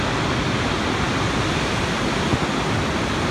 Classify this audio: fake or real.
real